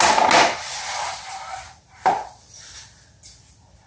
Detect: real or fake real